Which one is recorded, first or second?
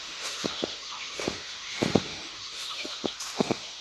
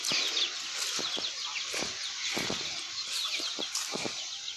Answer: second